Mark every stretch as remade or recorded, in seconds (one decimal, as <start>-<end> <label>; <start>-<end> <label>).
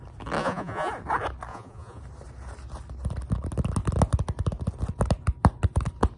0.0-0.4 recorded; 0.4-0.9 remade; 0.9-1.5 recorded; 1.5-2.0 remade; 2.0-6.2 recorded